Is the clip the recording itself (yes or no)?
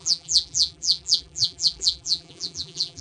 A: no